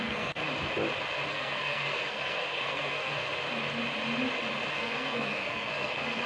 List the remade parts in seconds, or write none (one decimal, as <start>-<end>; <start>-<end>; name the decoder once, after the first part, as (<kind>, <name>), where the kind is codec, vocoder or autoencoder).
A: 0.0-0.4 (codec, SNAC); 1.3-3.3; 4.7-6.3